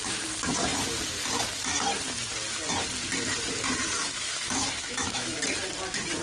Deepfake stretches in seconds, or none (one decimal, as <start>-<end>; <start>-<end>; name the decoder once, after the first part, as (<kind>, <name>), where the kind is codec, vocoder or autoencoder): 4.0-5.4 (autoencoder, DAC-VAE)